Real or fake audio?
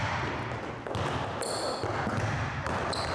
real